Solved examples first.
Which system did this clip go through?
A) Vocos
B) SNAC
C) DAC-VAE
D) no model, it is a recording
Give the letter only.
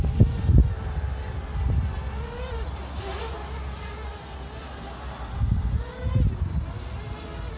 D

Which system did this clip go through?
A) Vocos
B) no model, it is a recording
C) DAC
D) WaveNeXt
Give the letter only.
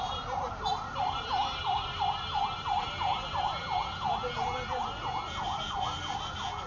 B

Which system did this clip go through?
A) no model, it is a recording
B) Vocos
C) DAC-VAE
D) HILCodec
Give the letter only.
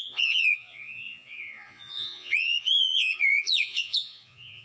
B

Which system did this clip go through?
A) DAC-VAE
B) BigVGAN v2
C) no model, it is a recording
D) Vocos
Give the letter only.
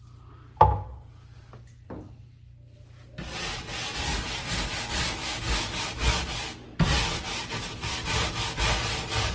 C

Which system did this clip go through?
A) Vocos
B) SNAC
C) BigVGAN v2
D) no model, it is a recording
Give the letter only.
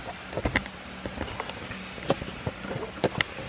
D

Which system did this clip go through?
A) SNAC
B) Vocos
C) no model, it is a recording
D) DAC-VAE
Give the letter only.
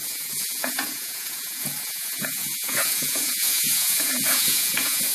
B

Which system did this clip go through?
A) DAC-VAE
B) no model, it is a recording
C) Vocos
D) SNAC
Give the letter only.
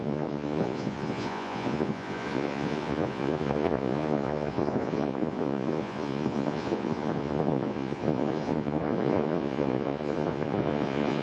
C